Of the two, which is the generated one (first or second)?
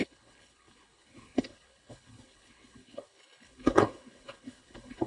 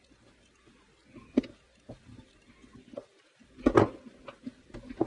first